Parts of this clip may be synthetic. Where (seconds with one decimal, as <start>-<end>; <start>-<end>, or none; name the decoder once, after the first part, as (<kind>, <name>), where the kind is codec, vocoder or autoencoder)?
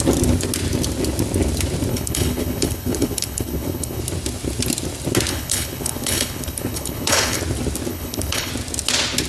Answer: 1.9-4.0 (codec, HILCodec); 5.3-7.4; 7.9-8.5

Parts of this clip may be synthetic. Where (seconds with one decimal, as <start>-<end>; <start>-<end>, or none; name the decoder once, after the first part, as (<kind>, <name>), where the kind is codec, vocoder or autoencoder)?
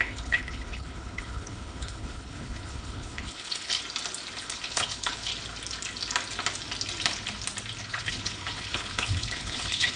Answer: 0.0-3.8 (codec, HILCodec); 4.4-5.3; 7.8-10.0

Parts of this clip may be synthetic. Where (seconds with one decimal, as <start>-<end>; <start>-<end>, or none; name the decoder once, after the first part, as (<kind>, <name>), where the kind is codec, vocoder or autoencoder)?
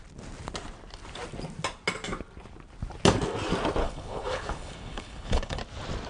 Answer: 3.8-5.6 (codec, HILCodec)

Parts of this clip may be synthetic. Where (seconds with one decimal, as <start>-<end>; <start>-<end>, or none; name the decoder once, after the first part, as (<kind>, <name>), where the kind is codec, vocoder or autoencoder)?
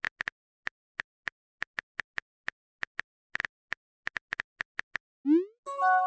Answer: none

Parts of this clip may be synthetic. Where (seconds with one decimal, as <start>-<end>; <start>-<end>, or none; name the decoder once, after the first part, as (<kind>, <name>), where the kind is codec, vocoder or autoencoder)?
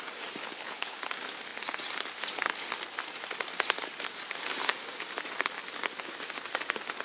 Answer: 0.4-1.0 (codec, HILCodec)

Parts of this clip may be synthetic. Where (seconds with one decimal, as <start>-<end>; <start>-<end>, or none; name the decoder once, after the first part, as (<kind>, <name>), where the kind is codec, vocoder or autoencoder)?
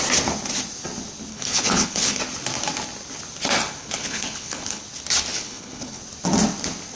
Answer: 1.3-2.2 (codec, HILCodec); 3.8-4.8; 5.3-6.0